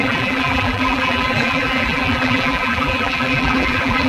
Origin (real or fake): fake